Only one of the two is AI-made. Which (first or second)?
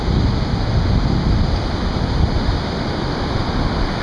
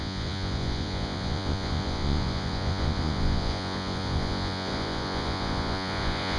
second